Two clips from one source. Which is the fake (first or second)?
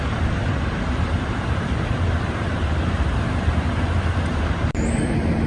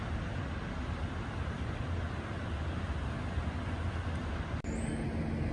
first